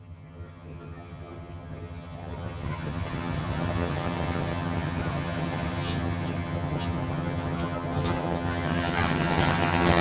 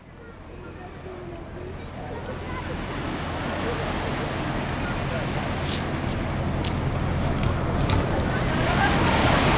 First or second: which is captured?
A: second